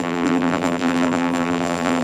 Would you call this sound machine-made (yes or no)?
yes